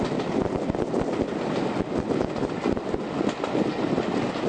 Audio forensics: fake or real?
real